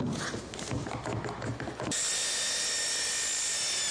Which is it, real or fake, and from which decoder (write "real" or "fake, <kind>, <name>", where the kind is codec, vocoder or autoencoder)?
real